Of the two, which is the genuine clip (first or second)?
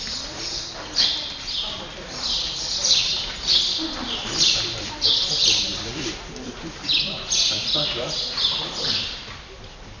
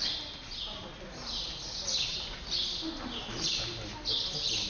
second